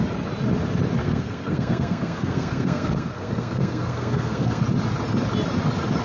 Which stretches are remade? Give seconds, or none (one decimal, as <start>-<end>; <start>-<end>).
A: 1.0-4.6